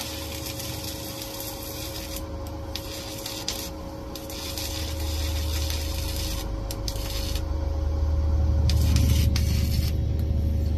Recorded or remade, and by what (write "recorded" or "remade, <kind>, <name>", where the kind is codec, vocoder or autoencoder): recorded